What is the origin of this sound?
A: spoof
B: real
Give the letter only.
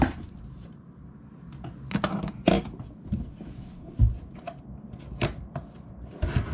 B